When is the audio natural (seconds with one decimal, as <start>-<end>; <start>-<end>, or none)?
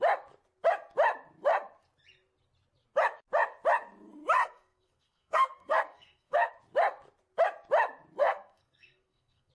0.0-4.4; 6.5-8.2